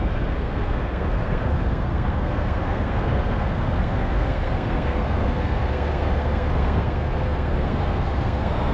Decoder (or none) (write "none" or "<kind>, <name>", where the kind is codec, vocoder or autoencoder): codec, SNAC